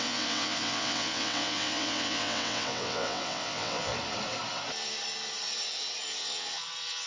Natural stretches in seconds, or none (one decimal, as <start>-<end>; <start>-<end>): 3.9-6.2